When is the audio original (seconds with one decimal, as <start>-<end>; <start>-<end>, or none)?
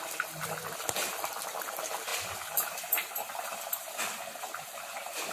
0.0-5.3